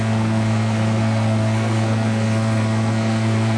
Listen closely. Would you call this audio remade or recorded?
remade